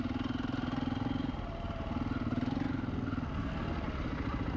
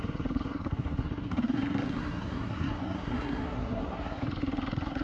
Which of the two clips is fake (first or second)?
second